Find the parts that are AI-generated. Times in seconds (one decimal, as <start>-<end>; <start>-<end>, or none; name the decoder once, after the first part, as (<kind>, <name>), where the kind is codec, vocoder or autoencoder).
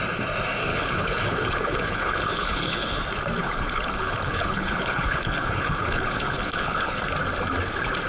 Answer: 0.7-3.0 (codec, HILCodec); 3.4-7.0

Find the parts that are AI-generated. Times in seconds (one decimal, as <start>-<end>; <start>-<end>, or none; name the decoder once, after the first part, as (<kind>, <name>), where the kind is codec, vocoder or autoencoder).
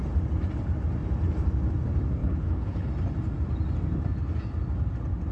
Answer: 2.2-2.9 (codec, HILCodec)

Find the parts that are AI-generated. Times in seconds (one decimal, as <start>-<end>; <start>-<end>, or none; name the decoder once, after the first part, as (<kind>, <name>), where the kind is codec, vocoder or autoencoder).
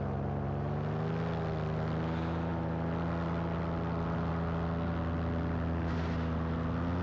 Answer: none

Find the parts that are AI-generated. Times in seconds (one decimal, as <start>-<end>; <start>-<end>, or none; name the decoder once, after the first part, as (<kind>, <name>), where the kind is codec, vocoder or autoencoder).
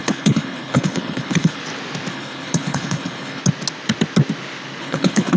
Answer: 0.0-1.6 (codec, HILCodec); 2.1-3.4; 4.8-5.4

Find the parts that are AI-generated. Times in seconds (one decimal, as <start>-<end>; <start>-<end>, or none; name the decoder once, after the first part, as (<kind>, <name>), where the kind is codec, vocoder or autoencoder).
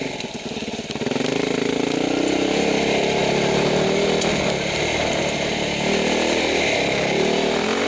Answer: none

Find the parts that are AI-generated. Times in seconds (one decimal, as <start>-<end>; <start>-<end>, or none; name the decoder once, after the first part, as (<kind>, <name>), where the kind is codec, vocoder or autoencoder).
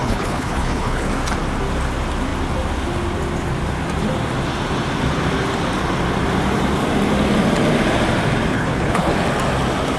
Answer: 0.0-1.1 (codec, HILCodec); 8.5-9.1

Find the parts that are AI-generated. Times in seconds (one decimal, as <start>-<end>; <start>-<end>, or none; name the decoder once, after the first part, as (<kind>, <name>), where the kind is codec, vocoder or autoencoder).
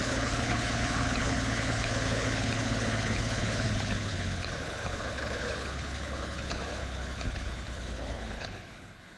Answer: 0.0-9.2 (codec, HILCodec)